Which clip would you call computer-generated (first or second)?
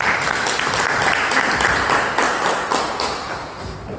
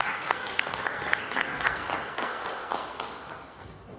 second